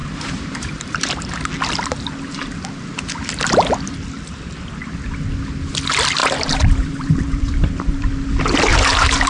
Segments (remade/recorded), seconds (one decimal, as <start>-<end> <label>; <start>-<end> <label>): 0.0-1.5 remade; 1.5-6.2 recorded; 6.2-8.1 remade; 8.1-8.7 recorded; 8.7-9.3 remade